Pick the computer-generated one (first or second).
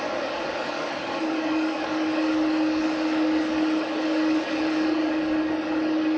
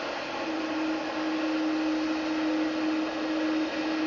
first